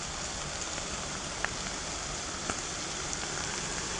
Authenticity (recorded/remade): recorded